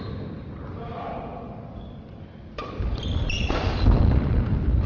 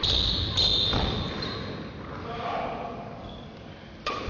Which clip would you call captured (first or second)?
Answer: second